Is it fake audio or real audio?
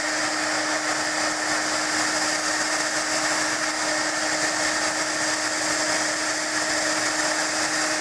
real